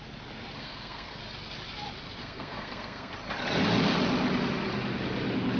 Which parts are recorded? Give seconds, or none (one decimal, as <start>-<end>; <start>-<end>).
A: 0.0-0.6; 1.2-2.2; 3.1-5.6